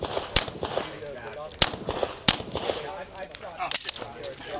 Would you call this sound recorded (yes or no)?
yes